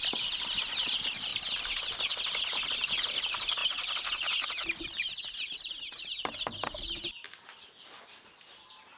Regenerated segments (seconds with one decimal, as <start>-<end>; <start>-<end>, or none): none